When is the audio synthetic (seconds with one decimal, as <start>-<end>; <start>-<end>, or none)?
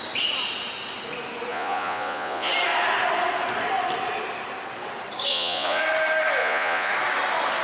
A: 1.5-2.5; 5.3-5.8; 6.4-6.9